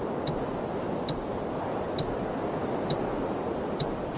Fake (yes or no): no